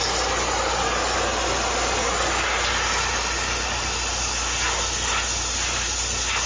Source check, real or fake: real